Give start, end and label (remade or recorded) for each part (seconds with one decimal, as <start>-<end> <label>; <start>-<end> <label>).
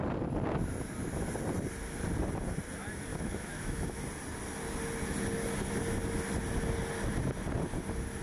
0.0-3.1 recorded; 3.1-4.0 remade; 4.0-8.2 recorded